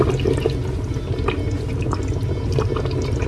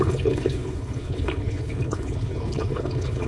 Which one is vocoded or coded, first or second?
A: second